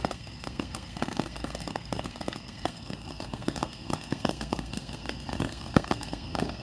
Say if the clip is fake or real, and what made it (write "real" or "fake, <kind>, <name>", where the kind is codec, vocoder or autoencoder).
fake, codec, SNAC